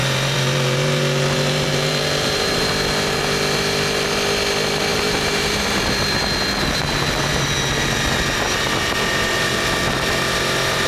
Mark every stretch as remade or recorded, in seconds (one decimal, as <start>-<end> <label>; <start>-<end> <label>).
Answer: 0.0-2.7 remade; 2.7-4.9 recorded; 4.9-5.8 remade; 5.8-10.9 recorded